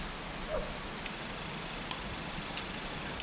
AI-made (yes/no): no